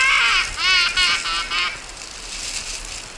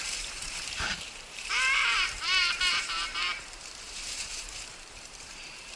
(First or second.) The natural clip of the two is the first